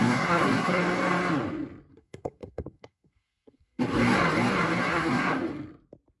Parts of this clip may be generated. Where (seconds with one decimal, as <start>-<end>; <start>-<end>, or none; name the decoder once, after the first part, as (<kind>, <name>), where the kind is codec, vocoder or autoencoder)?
0.0-0.8 (codec, SNAC); 1.9-3.8; 4.8-5.4